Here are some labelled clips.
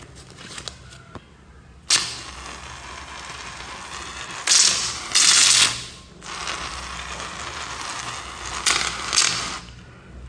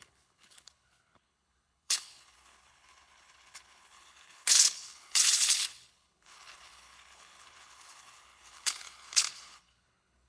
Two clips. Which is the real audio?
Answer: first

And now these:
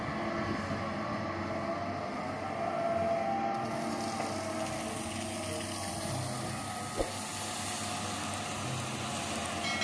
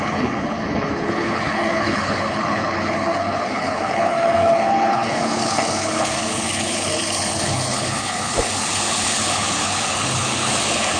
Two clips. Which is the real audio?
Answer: first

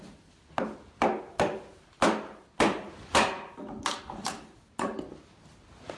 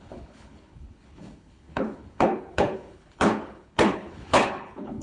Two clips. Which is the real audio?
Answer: first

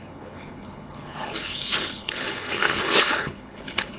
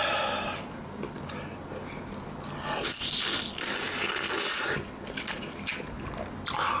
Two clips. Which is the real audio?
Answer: second